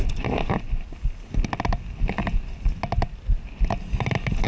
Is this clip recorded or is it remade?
recorded